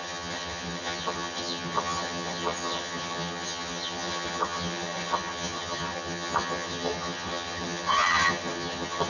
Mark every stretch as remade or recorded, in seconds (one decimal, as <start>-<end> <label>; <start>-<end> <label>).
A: 0.0-9.1 remade